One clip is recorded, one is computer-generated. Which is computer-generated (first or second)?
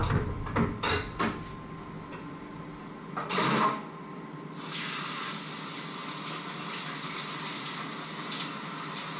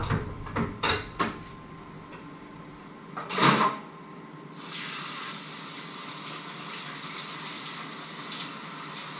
second